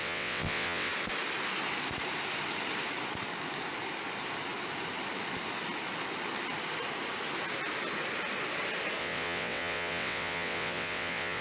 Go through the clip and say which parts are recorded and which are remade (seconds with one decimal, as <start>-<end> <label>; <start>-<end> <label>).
0.0-0.9 remade; 0.9-9.0 recorded; 9.0-11.4 remade